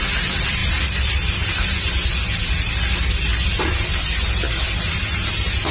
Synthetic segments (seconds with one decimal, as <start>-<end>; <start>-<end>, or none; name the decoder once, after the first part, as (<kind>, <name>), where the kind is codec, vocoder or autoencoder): none